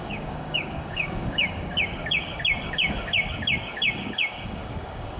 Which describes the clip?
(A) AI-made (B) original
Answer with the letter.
A